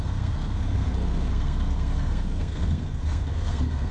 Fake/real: fake